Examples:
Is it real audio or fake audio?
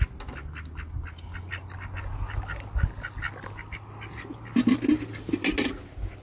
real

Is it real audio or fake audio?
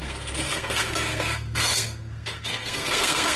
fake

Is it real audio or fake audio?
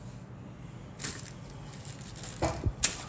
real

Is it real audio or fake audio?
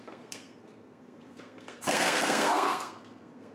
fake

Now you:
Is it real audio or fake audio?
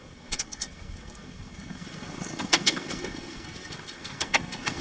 fake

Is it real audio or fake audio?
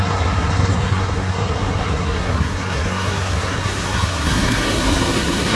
fake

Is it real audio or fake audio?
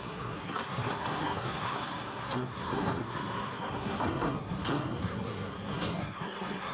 fake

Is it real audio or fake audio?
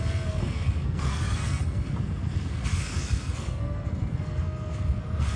fake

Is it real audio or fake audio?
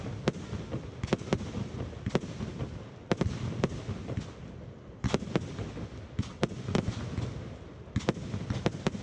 real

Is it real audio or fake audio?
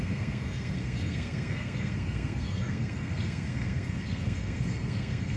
fake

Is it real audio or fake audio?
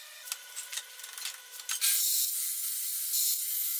real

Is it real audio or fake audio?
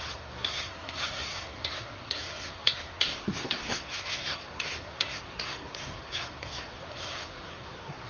fake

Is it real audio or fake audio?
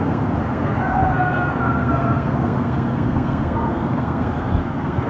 fake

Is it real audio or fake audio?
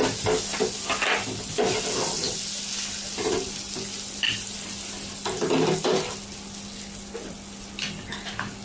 real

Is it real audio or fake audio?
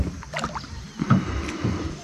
real